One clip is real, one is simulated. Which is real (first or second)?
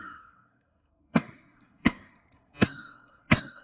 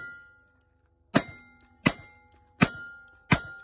second